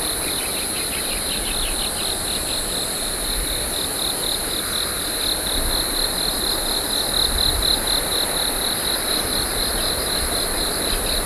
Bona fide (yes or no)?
yes